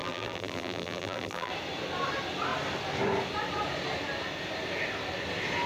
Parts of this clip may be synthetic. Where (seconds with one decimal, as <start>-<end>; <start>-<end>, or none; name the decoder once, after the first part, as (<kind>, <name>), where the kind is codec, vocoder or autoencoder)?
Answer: 0.0-1.5 (vocoder, BigVGAN v2)